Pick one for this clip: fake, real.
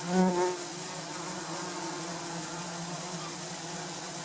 real